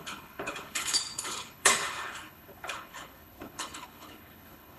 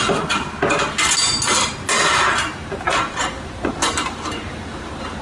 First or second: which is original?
second